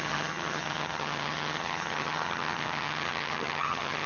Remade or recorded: remade